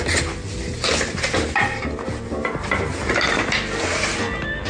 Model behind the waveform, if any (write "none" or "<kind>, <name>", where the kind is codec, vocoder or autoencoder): none